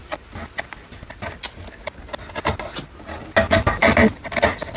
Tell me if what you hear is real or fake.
real